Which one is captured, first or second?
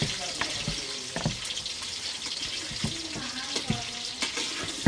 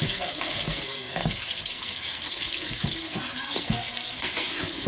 first